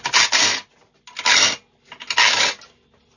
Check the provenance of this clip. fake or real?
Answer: real